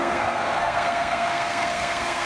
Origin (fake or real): fake